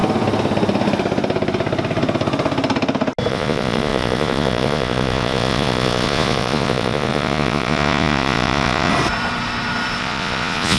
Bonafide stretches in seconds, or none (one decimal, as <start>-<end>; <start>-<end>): 0.0-3.3; 8.9-10.0